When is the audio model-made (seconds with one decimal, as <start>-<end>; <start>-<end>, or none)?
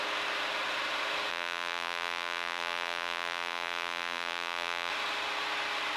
1.3-4.9